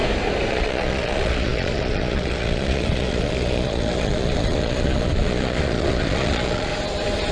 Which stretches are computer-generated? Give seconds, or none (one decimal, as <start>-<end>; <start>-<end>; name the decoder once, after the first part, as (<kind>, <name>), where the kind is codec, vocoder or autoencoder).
0.5-6.7 (vocoder, Vocos)

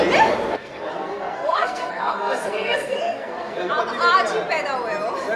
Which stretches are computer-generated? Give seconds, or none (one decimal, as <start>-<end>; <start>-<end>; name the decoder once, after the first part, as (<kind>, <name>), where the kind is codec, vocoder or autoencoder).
0.5-3.7 (codec, SNAC)

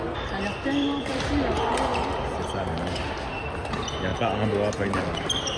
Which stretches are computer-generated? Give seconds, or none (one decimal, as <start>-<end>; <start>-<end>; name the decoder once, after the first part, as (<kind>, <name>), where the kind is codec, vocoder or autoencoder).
none